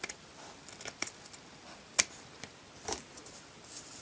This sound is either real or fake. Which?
real